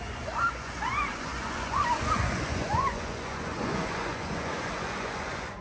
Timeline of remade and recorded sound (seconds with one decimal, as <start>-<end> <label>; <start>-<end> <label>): 0.0-5.6 remade